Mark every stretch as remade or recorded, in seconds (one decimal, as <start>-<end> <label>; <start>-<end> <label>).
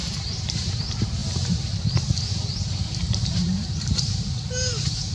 0.0-1.2 remade; 1.2-3.3 recorded; 3.3-5.1 remade